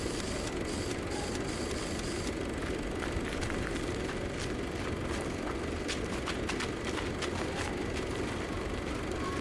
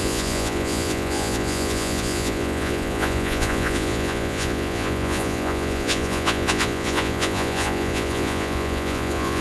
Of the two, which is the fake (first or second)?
second